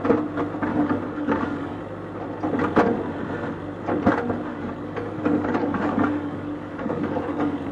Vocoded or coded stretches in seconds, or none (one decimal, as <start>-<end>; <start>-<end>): 0.7-1.8; 4.5-7.7